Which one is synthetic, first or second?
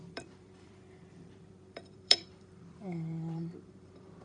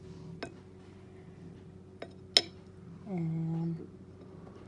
first